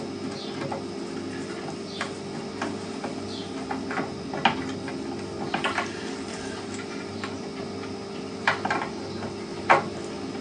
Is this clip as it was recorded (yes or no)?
yes